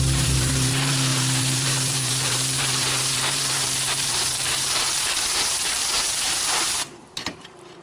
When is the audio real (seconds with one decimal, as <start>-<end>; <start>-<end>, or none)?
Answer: none